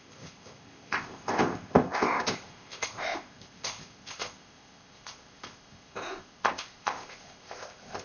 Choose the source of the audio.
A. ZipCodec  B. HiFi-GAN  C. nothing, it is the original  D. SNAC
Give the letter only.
A